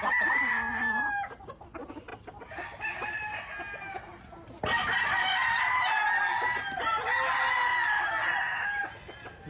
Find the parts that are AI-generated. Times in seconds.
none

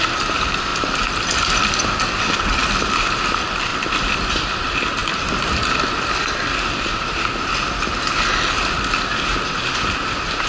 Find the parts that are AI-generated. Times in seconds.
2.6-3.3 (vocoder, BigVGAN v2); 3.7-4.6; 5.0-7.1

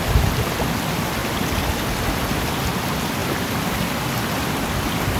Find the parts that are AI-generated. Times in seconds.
3.2-3.7 (vocoder, BigVGAN v2)

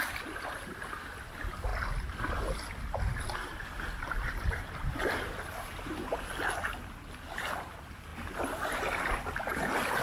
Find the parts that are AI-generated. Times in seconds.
3.5-5.1 (vocoder, BigVGAN v2)

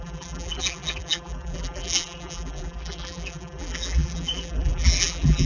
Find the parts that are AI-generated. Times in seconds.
0.0-5.5 (vocoder, BigVGAN v2)

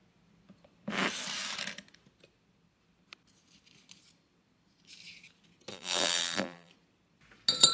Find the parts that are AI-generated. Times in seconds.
5.7-6.7 (vocoder, BigVGAN v2)